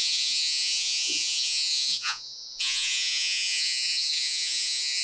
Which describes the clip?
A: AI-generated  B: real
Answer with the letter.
A